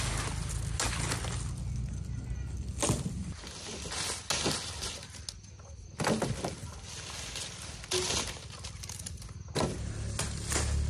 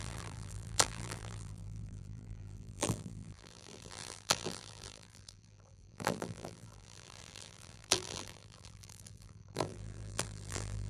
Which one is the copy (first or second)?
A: second